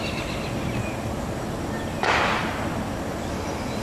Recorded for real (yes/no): yes